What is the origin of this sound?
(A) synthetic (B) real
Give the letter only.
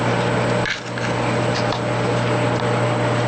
B